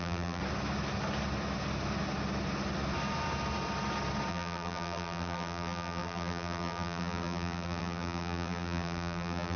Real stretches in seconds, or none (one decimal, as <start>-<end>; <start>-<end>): 0.4-4.3